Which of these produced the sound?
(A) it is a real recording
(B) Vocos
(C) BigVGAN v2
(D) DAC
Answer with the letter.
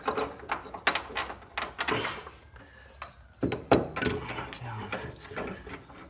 A